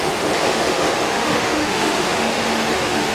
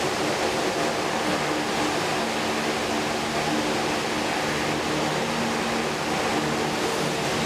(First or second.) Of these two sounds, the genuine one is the second